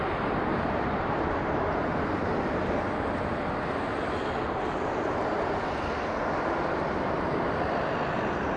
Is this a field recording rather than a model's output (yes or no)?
yes